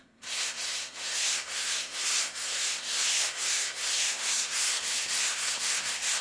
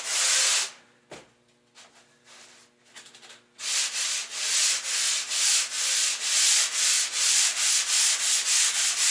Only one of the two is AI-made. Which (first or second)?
first